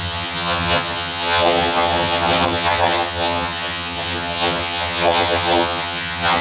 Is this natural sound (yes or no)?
no